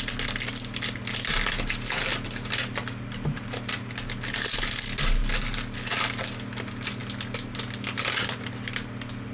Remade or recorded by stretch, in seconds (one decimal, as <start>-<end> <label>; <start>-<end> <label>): 0.0-9.3 recorded